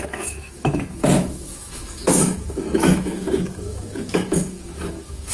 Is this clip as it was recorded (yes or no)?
no